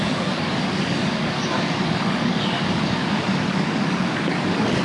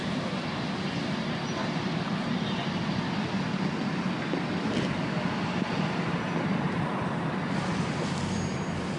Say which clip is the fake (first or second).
first